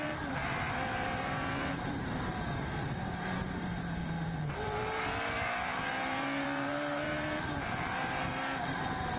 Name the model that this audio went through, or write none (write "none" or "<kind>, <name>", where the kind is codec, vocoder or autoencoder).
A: vocoder, BigVGAN v2